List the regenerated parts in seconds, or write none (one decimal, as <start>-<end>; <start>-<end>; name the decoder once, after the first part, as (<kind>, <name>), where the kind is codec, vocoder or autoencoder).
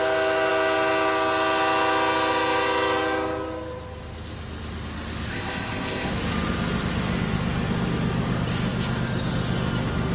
5.3-6.1 (codec, ZipCodec)